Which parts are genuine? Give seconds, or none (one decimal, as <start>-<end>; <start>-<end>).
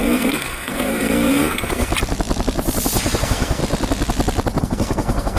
1.9-3.2; 3.6-4.6